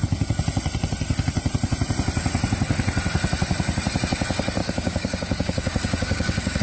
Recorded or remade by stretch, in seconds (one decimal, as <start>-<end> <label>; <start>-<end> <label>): 0.0-4.6 recorded; 4.6-6.6 remade